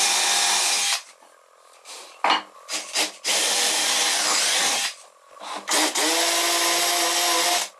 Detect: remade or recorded recorded